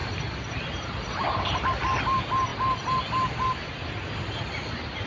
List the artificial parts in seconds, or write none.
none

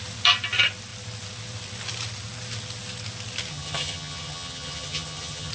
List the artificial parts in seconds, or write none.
3.5-5.5 (vocoder, HiFi-GAN)

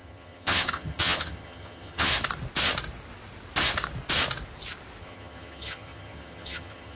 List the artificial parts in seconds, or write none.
0.0-2.1 (vocoder, HiFi-GAN); 5.0-7.0

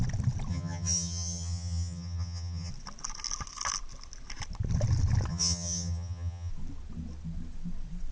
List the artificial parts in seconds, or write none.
0.5-2.7 (vocoder, HiFi-GAN); 5.3-6.5

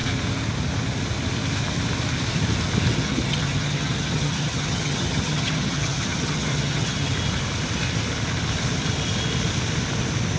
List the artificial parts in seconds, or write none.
2.9-7.1 (vocoder, HiFi-GAN)